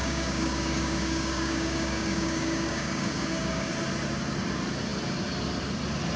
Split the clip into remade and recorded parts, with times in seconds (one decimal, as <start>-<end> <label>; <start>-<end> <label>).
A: 0.0-3.7 remade; 3.7-6.2 recorded